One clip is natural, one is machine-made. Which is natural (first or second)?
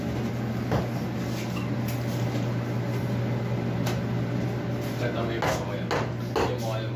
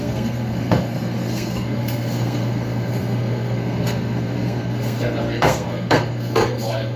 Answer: first